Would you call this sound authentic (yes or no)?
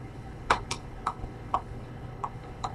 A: no